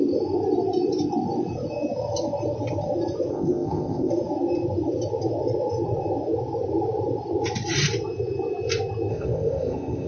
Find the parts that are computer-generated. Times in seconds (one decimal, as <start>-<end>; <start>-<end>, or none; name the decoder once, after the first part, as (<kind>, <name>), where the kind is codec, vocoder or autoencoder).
3.3-4.1 (codec, ZipCodec); 9.1-10.1